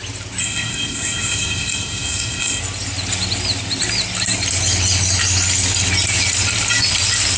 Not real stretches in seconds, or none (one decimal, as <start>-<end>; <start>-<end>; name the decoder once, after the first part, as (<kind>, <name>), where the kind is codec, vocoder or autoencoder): 0.4-2.6 (codec, ZipCodec)